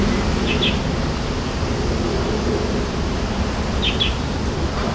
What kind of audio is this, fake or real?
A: real